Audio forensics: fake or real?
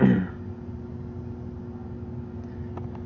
real